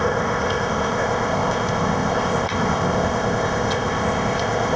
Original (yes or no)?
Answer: no